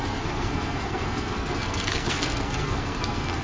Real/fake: fake